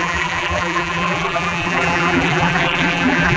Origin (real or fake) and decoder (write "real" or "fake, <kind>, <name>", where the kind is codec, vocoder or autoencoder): fake, vocoder, BigVGAN v2